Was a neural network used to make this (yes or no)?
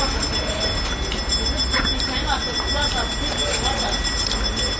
no